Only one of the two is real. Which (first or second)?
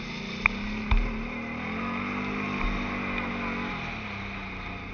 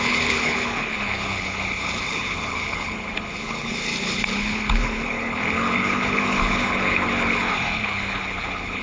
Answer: first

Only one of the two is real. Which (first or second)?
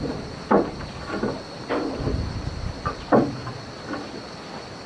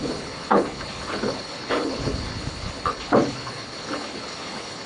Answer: first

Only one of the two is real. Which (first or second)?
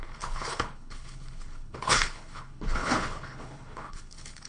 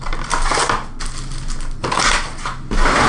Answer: second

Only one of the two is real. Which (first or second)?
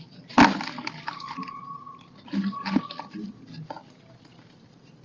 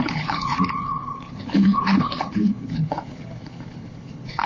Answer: first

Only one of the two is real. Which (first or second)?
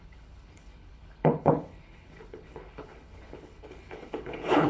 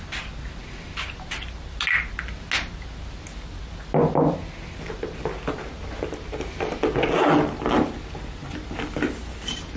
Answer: second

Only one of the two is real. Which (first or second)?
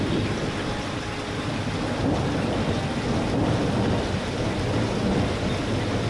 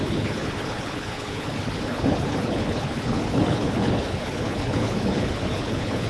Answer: first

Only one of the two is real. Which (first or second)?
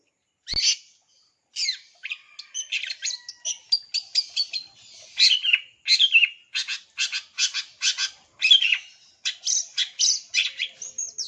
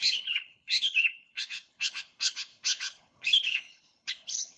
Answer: first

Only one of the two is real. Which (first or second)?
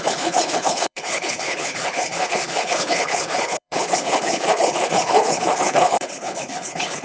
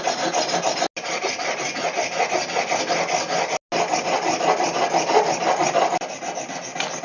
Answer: second